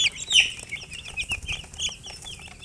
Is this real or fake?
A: real